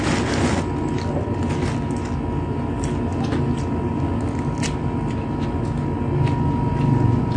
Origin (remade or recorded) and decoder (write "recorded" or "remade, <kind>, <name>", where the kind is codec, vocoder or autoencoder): recorded